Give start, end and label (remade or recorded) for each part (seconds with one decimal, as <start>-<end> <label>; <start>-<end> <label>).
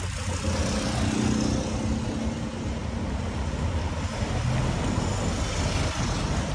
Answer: 0.0-6.5 recorded